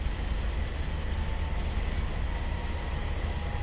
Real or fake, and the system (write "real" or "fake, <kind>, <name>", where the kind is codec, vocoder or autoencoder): real